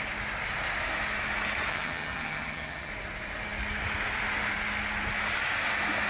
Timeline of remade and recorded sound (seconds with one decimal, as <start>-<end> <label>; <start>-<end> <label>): 0.0-1.7 recorded; 1.7-2.9 remade; 2.9-6.1 recorded